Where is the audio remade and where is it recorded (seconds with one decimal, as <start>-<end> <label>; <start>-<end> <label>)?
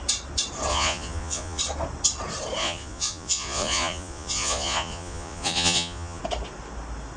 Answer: 0.0-0.7 recorded; 0.7-1.6 remade; 1.6-2.6 recorded; 2.6-6.2 remade; 6.2-7.2 recorded